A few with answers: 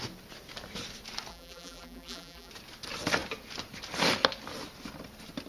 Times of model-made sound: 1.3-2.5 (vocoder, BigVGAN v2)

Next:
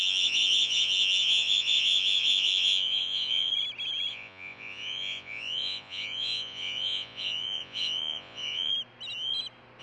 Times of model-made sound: 0.0-3.5 (vocoder, Vocos); 4.1-8.7